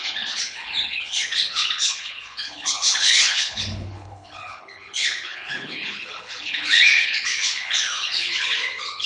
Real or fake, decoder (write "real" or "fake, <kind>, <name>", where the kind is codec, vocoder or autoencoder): fake, codec, HILCodec